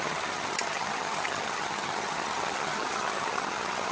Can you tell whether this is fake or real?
fake